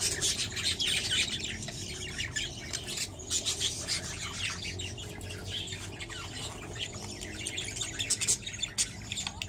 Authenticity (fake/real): real